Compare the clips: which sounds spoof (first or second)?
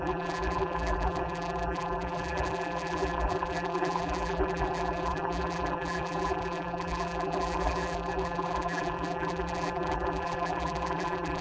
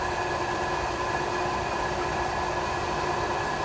first